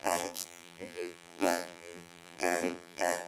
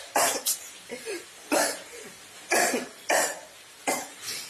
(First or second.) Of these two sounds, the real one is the second